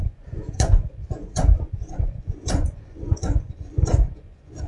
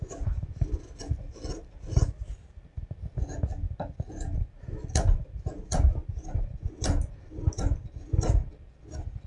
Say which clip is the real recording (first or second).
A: second